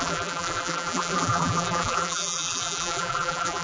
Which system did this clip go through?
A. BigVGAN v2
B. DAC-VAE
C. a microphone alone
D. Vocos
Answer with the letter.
A